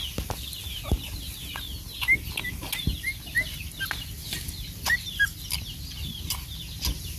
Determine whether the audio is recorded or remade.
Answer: recorded